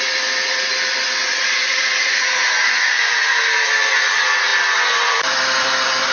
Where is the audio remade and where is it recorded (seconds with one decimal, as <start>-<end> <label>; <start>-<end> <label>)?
0.0-1.2 recorded; 1.2-3.3 remade; 3.3-6.1 recorded